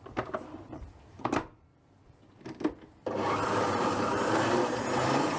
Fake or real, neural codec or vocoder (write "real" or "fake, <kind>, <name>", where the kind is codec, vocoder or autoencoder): fake, vocoder, BigVGAN v2